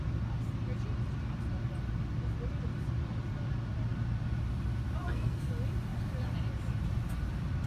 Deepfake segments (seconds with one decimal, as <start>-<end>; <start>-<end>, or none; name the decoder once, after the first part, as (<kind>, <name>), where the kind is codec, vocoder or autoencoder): 5.0-5.5 (codec, SNAC)